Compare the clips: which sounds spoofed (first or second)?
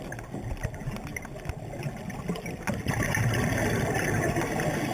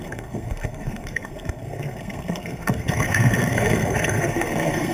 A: second